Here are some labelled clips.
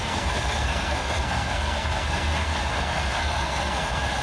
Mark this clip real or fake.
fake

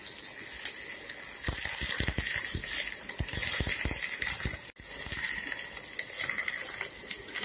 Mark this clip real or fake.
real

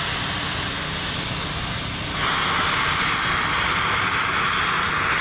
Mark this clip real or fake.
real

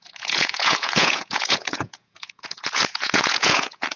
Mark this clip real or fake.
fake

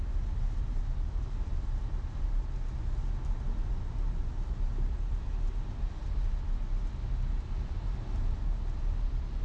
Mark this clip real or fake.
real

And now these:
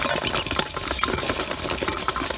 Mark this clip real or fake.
real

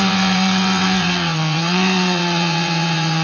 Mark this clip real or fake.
fake